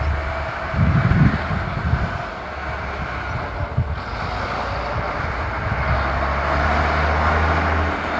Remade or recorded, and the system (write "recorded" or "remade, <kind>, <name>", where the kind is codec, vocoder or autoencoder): recorded